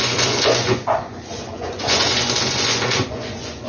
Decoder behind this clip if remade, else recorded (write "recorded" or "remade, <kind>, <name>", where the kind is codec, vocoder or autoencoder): remade, vocoder, Vocos